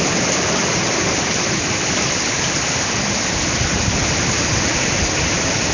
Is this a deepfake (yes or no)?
no